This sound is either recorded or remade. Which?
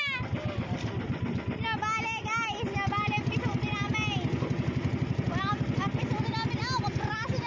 recorded